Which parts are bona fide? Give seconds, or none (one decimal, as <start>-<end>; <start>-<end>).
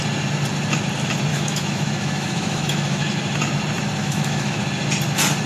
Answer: 0.0-1.3; 3.1-4.0; 4.6-5.5